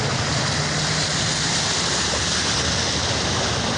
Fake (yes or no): no